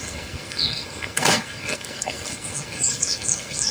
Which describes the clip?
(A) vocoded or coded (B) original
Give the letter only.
A